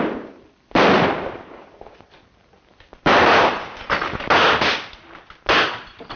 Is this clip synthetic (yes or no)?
yes